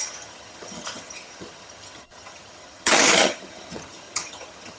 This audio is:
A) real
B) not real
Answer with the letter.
B